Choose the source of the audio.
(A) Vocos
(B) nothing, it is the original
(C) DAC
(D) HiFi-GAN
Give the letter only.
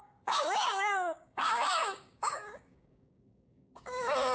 C